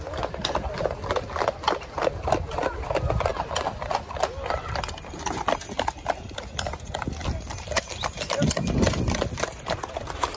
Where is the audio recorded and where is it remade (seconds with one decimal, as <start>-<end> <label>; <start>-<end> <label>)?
0.0-10.4 recorded